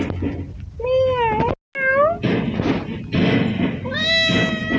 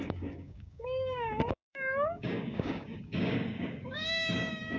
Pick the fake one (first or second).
second